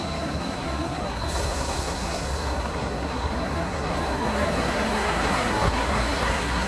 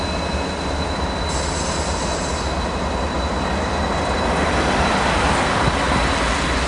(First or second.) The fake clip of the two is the first